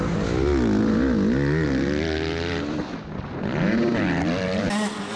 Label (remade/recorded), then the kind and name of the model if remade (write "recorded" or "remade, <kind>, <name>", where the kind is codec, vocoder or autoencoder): recorded